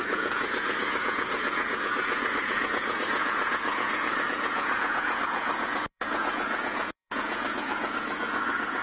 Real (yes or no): no